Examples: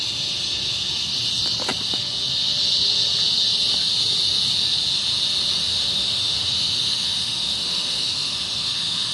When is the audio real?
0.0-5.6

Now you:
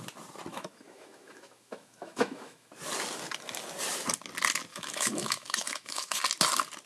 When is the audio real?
0.0-0.5; 2.7-4.7; 6.2-6.9

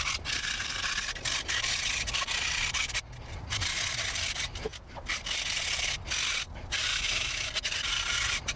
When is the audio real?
0.0-6.9; 7.5-8.6

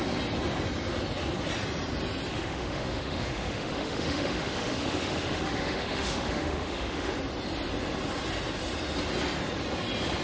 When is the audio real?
0.0-2.3; 7.1-10.2